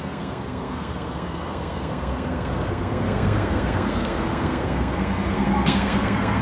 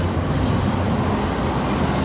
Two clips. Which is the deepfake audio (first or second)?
first